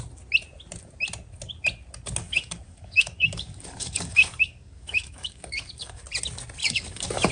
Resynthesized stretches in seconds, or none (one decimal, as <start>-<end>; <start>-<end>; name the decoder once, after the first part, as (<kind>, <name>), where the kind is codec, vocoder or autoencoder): 2.2-6.0 (codec, DAC); 6.6-7.3